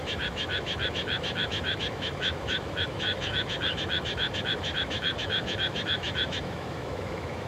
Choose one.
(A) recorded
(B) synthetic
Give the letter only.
B